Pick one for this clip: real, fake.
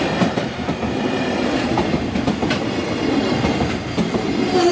real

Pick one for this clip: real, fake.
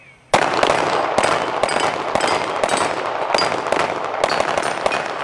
real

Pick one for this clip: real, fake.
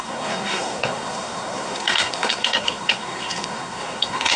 fake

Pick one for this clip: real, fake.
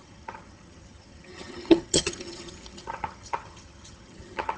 fake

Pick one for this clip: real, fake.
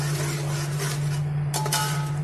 real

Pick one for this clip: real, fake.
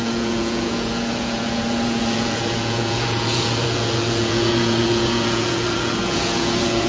fake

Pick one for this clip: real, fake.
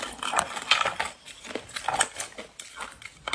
real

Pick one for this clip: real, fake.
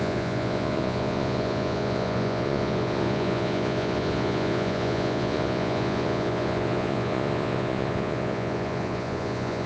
fake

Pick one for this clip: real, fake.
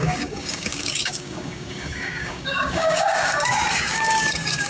fake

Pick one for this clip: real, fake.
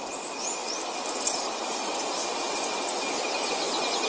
real